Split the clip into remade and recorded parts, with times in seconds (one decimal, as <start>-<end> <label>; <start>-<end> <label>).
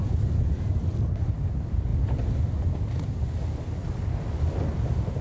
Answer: 0.0-5.2 recorded